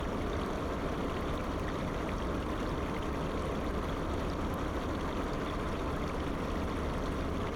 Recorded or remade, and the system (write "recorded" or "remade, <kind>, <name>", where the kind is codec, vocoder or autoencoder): recorded